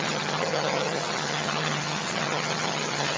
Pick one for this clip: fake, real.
fake